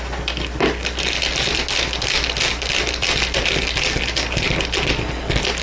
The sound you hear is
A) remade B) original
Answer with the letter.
B